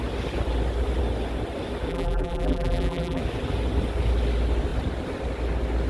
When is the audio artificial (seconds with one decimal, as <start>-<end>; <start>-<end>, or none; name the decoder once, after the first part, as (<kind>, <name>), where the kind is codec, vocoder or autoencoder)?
1.9-3.2 (vocoder, BigVGAN v2)